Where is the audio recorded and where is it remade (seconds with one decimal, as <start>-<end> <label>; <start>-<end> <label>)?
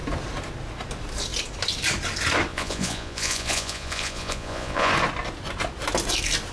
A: 0.0-2.5 recorded; 2.5-4.9 remade; 4.9-6.5 recorded